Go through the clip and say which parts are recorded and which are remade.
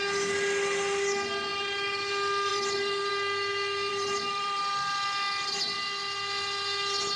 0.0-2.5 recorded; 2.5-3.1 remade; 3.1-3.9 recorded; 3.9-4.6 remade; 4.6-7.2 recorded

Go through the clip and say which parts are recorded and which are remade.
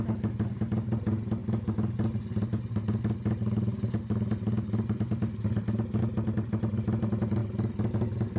0.0-8.4 recorded